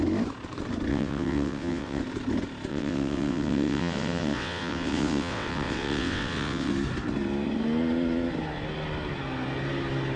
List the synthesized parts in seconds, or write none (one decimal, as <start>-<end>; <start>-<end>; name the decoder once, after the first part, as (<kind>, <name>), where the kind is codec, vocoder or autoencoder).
0.9-2.0 (vocoder, WaveNeXt); 2.7-6.7

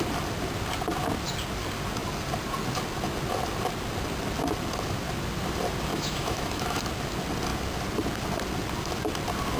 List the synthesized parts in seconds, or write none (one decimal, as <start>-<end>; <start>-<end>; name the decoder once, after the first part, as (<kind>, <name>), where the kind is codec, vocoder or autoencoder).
5.9-6.8 (autoencoder, DAC-VAE)

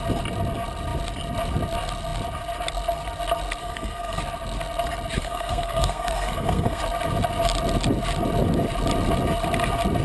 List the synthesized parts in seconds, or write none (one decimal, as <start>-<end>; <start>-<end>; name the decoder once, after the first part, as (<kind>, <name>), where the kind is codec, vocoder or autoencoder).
3.6-4.2 (codec, SNAC); 5.2-6.8